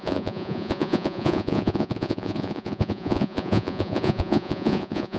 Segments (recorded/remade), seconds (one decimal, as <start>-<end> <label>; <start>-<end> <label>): 0.0-5.2 remade